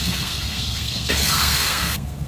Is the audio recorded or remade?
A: remade